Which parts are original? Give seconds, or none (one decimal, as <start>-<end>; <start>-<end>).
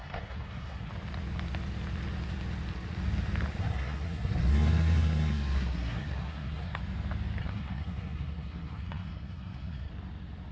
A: 0.9-3.6; 6.8-7.4; 9.9-10.5